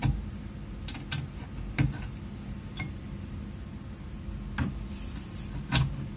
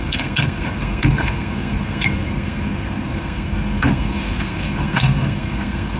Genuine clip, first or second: first